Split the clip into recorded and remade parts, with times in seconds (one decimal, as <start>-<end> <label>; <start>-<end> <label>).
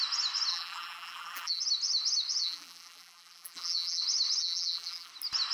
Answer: 0.0-0.5 recorded; 0.5-1.6 remade; 1.6-2.4 recorded; 2.4-4.0 remade; 4.0-4.4 recorded; 4.4-5.1 remade; 5.1-5.5 recorded